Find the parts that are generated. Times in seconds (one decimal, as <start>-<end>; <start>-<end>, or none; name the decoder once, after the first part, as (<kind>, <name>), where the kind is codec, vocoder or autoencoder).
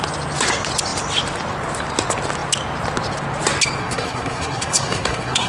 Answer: 3.8-5.5 (codec, SNAC)